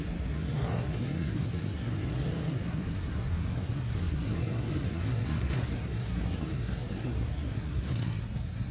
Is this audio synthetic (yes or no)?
yes